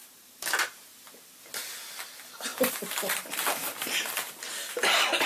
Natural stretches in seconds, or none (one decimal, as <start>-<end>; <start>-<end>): 0.0-5.3